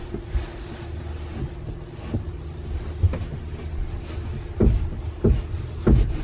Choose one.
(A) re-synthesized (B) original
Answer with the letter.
B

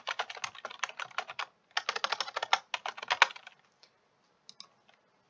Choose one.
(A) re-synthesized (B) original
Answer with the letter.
B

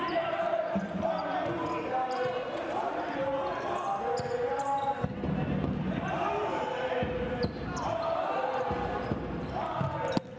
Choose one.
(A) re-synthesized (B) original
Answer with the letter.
B